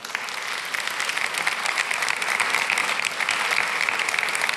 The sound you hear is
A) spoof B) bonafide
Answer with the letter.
B